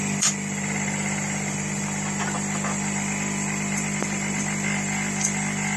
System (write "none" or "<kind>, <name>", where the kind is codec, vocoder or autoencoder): vocoder, BigVGAN v2